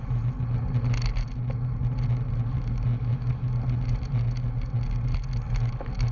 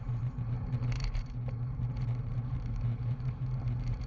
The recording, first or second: first